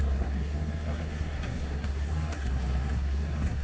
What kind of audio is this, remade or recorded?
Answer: remade